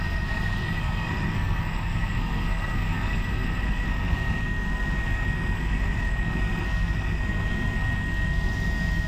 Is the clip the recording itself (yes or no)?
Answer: no